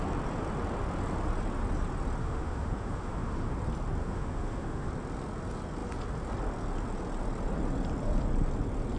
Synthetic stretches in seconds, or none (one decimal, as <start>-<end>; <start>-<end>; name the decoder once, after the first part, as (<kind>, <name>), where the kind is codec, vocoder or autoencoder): 2.2-3.6 (autoencoder, DAC-VAE); 4.0-4.9